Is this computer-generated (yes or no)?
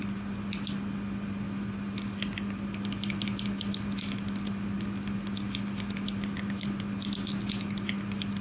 no